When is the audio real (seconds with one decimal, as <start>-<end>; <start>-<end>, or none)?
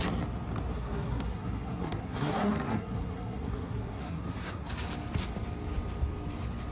0.0-0.7; 4.7-6.7